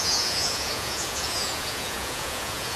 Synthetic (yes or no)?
yes